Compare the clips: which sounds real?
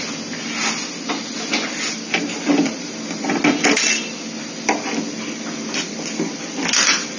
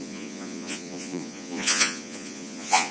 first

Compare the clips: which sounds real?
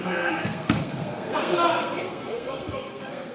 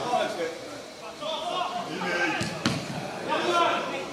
second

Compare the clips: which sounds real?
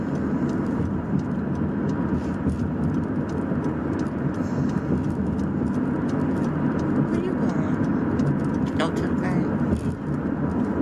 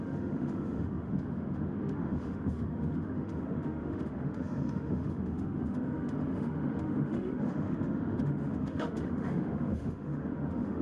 first